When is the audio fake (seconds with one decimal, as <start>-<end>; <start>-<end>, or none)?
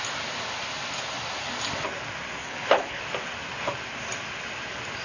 2.4-3.0